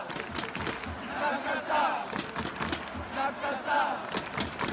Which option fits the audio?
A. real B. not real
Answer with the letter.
A